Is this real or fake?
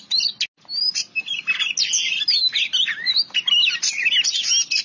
real